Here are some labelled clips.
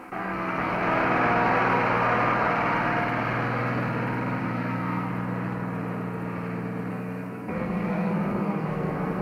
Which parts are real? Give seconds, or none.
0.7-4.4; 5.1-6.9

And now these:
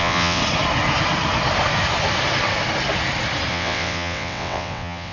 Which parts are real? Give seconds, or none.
0.4-3.5

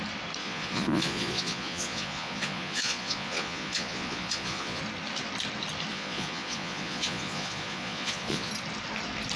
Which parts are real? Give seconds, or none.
0.0-0.4; 4.8-5.9; 8.5-9.4

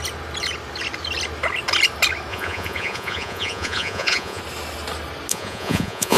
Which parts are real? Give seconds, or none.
0.0-2.3; 4.4-5.3

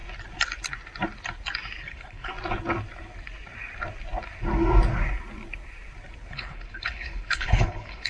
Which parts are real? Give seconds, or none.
0.0-1.8; 2.3-6.3

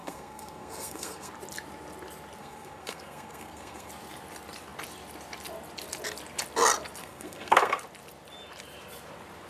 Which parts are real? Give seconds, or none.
1.3-2.4; 3.9-7.0; 7.8-9.5

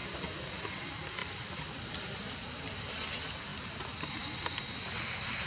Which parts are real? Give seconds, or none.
0.0-1.2; 2.8-3.5; 4.0-5.5

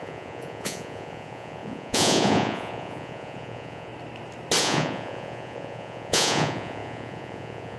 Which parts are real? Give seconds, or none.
3.9-4.6